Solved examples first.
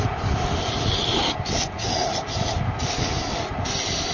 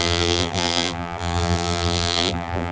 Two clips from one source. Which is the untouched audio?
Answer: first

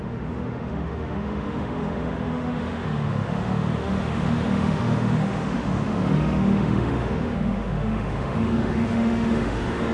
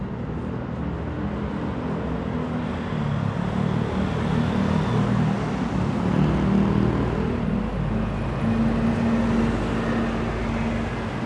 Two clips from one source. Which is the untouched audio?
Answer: second